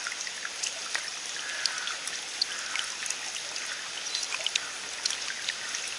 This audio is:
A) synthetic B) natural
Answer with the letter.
B